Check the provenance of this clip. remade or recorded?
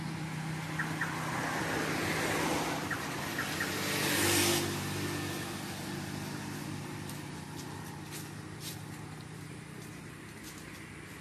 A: recorded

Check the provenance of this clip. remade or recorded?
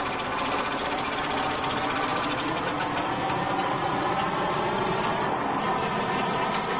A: recorded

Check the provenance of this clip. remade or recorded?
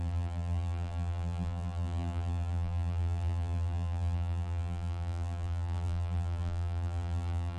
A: remade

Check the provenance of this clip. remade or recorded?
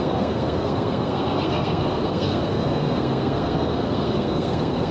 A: remade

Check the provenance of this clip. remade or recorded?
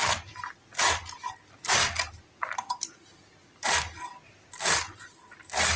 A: recorded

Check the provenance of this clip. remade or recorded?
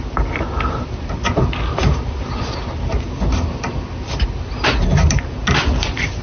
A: recorded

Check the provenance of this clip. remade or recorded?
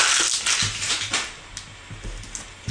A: recorded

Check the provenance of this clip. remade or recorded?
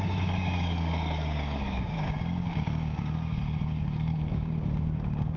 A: remade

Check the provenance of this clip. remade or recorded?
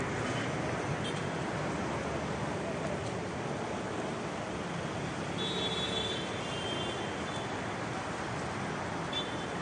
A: recorded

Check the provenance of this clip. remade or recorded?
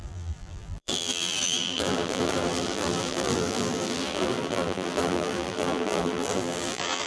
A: remade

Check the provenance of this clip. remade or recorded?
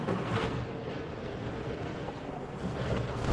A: remade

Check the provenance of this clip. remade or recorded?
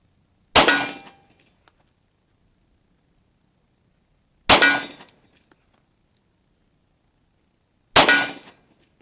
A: recorded